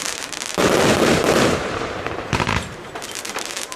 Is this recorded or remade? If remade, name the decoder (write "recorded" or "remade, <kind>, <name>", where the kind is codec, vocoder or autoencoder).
remade, vocoder, BigVGAN v2